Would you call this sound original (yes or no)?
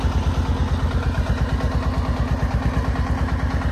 yes